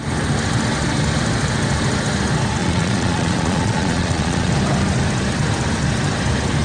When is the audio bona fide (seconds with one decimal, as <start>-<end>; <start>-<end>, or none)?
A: 0.0-2.6; 4.5-6.6